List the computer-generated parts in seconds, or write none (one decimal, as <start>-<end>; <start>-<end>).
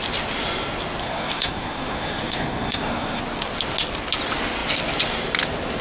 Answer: 1.0-3.2